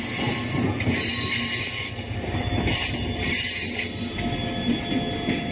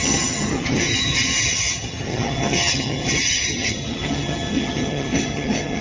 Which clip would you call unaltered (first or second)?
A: first